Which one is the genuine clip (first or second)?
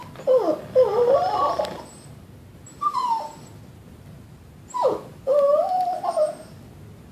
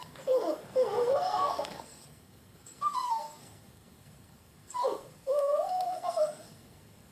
first